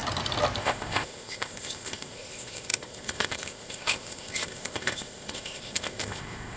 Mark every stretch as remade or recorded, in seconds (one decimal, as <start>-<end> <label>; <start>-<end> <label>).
0.0-0.6 recorded; 0.6-6.6 remade